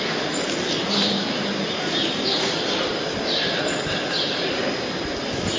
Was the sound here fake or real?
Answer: real